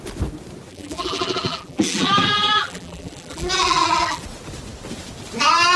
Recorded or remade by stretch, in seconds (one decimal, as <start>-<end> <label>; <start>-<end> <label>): 0.0-0.7 recorded; 0.7-4.2 remade; 4.2-5.8 recorded